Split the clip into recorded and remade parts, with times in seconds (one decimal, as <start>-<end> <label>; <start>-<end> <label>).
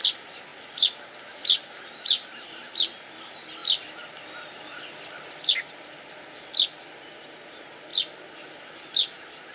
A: 0.0-9.5 recorded